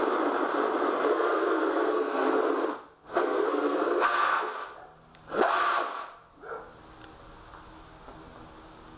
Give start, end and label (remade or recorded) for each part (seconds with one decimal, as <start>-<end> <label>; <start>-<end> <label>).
0.0-1.1 recorded; 1.1-2.4 remade; 2.4-3.0 recorded; 3.0-4.5 remade; 4.5-9.0 recorded